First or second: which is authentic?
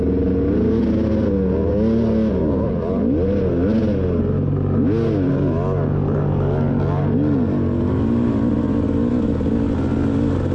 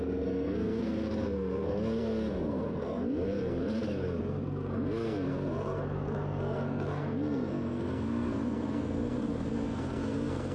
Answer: first